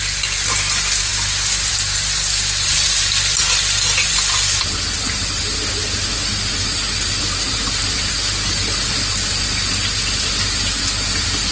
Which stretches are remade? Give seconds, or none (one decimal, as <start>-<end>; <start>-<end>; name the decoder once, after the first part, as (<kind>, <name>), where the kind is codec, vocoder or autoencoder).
none